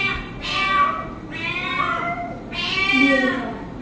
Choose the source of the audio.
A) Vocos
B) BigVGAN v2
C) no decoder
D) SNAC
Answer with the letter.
C